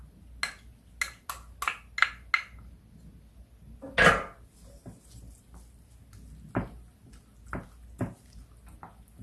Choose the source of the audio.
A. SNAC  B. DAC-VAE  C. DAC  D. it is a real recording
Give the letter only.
D